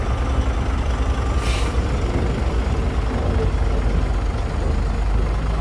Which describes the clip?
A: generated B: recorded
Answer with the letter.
B